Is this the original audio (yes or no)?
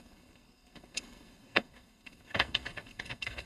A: no